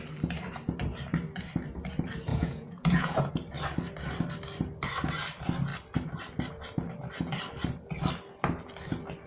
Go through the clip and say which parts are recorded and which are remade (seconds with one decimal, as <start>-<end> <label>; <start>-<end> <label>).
0.0-2.3 recorded; 2.3-3.3 remade; 3.3-9.3 recorded